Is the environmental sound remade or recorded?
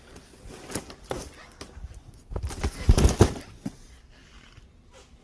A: recorded